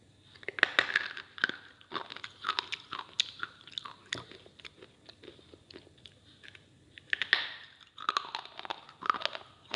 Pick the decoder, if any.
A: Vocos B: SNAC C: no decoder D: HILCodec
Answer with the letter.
C